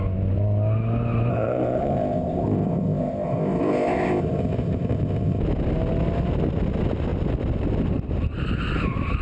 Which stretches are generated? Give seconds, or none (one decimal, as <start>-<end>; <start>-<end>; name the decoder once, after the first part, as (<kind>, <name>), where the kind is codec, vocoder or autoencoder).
1.3-5.4 (codec, ZipCodec)